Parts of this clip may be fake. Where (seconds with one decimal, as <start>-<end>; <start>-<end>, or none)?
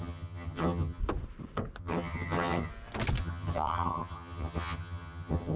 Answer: 0.0-1.0; 1.8-2.7; 3.2-5.6